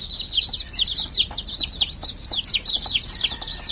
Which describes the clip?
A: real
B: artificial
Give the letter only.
A